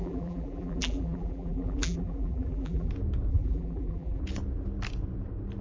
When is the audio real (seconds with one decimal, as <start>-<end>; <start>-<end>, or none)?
2.9-3.3; 4.2-5.6